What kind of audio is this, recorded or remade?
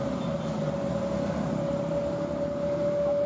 recorded